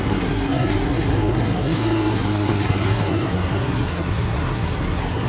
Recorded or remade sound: remade